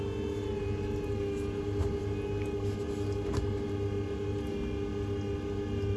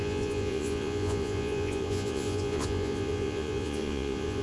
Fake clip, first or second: second